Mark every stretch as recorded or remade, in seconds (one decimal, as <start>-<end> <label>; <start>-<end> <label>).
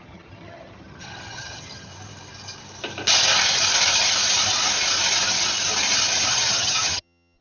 0.0-1.9 remade; 1.9-6.3 recorded; 6.3-7.4 remade